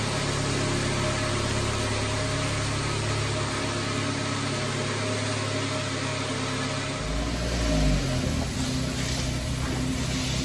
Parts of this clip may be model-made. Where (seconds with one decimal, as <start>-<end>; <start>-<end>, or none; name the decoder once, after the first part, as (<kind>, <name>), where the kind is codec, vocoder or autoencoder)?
none